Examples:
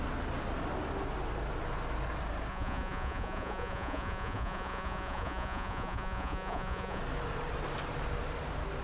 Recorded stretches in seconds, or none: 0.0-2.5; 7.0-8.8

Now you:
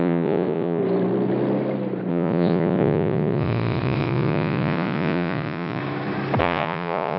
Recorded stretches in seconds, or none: 0.8-2.1; 5.8-6.4

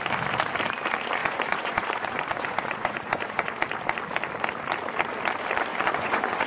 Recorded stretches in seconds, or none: 0.0-1.2; 3.5-5.7

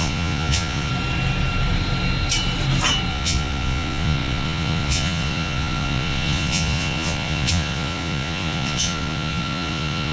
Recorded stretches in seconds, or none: 0.9-3.1

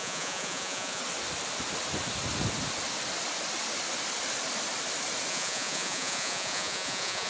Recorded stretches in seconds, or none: 1.0-5.3

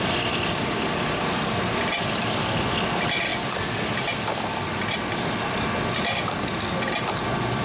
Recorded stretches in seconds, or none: 0.0-7.6

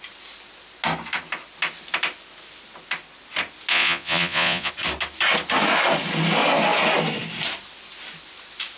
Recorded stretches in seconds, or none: 0.0-3.7; 4.7-8.8